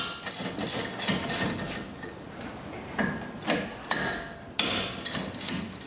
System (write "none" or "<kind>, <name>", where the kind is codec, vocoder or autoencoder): none